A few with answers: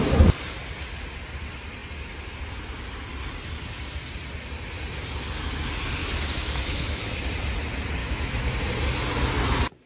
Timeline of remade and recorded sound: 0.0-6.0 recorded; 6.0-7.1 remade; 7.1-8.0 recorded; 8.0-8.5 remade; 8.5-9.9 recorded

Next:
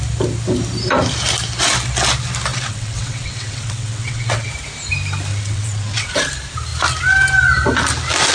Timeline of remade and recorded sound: 0.0-2.5 recorded; 2.5-4.5 remade; 4.5-5.3 recorded; 5.3-6.1 remade; 6.1-8.3 recorded

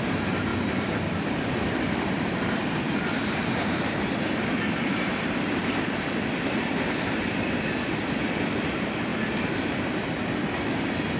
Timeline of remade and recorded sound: 0.0-0.5 recorded; 0.5-4.6 remade; 4.6-5.6 recorded; 5.6-7.6 remade; 7.6-9.1 recorded; 9.1-10.1 remade; 10.1-11.2 recorded

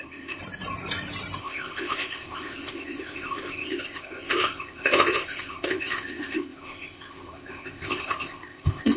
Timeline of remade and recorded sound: 0.0-0.4 remade; 0.4-1.4 recorded; 1.4-9.0 remade

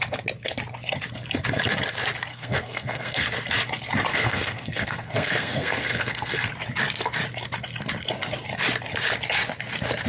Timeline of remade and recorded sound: 0.0-2.3 recorded; 2.3-3.3 remade; 3.3-4.1 recorded; 4.1-6.5 remade; 6.5-10.1 recorded

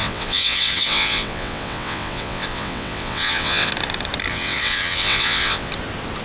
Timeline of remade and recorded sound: 0.0-3.7 remade; 3.7-4.3 recorded; 4.3-5.7 remade; 5.7-6.2 recorded

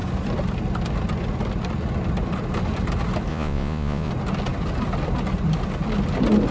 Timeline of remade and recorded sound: 0.0-3.3 recorded; 3.3-4.1 remade; 4.1-6.5 recorded

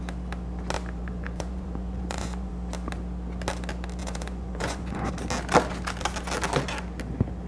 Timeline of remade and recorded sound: 0.0-1.0 recorded; 1.0-2.5 remade; 2.5-4.0 recorded; 4.0-5.1 remade; 5.1-7.5 recorded